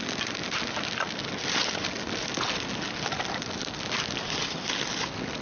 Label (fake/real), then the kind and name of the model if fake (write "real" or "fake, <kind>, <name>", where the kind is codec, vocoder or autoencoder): real